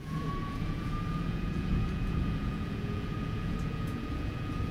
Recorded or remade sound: remade